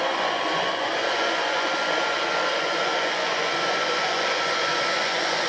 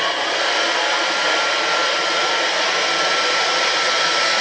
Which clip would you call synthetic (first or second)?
first